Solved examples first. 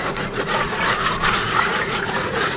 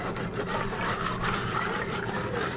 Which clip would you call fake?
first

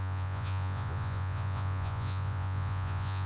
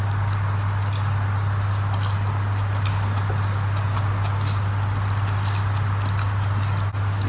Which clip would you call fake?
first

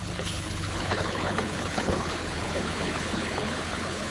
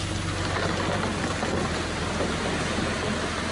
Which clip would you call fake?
first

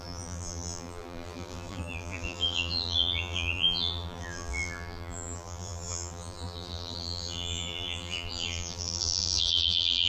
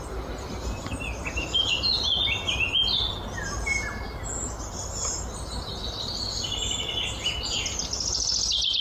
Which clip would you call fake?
first